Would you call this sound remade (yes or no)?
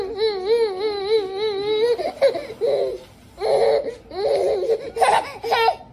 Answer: no